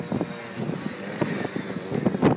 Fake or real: real